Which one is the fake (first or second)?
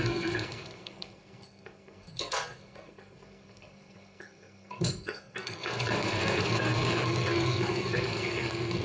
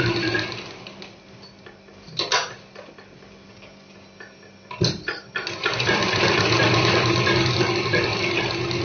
first